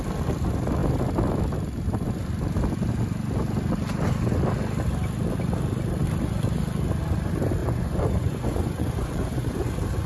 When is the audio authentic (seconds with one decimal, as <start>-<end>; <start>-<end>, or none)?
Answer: 0.0-7.6; 9.7-10.1